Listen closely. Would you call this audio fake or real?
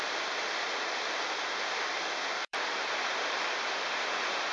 fake